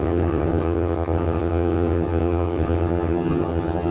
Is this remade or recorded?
remade